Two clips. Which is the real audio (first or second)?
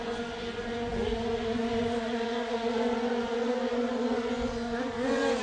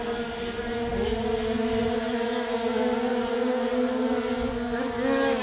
second